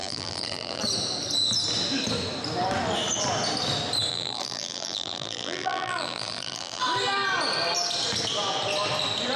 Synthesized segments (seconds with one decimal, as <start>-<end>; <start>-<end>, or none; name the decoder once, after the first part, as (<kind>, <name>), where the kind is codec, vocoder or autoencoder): 0.0-0.8 (vocoder, BigVGAN v2); 4.1-6.8